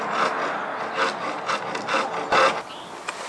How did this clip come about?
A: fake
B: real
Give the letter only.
B